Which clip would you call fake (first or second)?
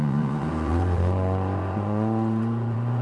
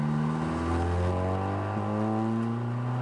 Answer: first